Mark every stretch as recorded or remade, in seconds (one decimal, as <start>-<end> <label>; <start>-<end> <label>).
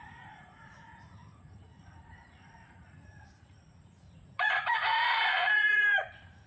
0.0-6.5 remade